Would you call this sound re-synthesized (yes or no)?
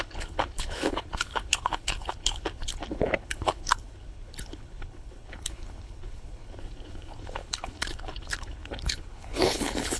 yes